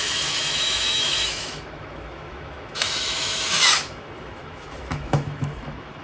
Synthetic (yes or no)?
yes